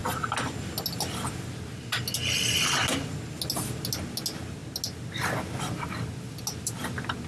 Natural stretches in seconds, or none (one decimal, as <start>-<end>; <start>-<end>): 0.0-7.3